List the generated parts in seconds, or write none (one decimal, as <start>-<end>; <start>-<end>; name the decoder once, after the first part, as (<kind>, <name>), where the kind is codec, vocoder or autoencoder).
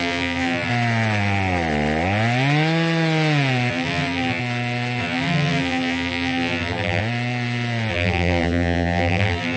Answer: 0.0-0.7 (vocoder, BigVGAN v2); 3.7-4.4; 5.0-7.0; 7.9-9.6